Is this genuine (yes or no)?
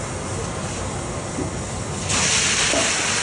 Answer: yes